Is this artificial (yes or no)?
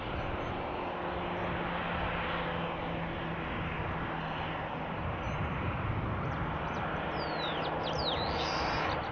no